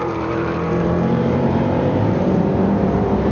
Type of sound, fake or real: fake